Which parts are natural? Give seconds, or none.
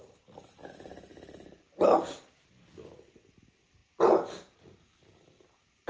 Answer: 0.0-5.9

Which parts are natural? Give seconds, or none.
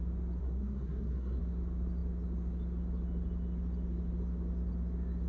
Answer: 0.0-0.4; 1.4-5.3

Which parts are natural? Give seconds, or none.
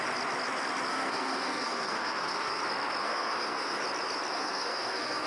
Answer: 0.0-0.9; 2.6-3.0; 3.8-4.3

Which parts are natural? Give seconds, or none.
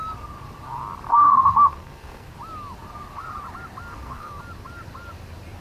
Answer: 0.0-1.1; 2.3-3.9; 4.4-5.6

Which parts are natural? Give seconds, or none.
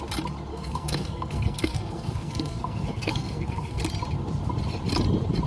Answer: 0.0-0.5; 3.8-5.5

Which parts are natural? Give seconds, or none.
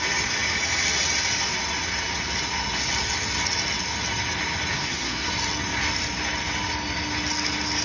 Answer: 0.0-4.7; 5.3-7.8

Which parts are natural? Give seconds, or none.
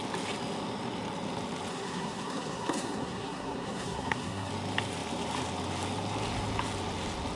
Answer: 0.0-1.7; 4.5-7.4